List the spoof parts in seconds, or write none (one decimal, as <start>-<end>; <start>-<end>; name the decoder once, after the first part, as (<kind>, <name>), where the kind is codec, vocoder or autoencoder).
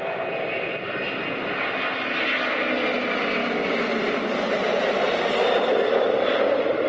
none